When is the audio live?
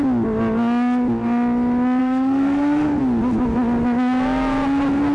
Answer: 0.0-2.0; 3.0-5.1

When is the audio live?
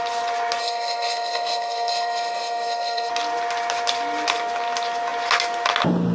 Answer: 0.0-0.6; 3.1-6.1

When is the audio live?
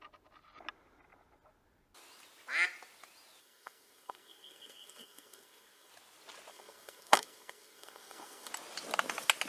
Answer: 0.0-3.4; 5.9-6.5; 8.5-9.5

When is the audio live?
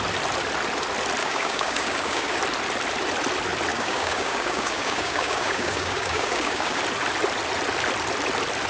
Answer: 0.0-1.2; 2.4-3.7; 6.8-8.7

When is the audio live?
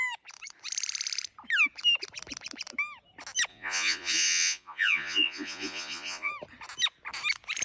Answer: 0.0-3.5; 6.3-7.6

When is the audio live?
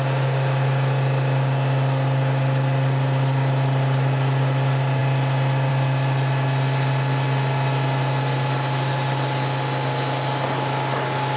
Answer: 0.0-11.4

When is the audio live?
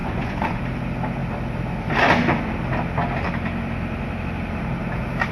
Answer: 0.6-5.3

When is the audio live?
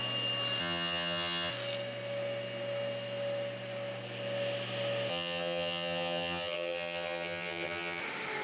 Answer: 0.0-0.6; 1.5-5.1; 8.0-8.4